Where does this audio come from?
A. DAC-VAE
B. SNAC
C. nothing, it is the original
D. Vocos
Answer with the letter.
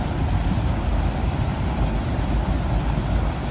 C